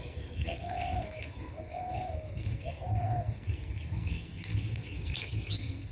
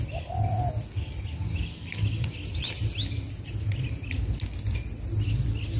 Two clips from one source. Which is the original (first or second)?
second